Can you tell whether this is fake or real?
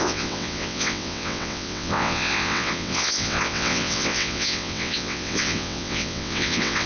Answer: fake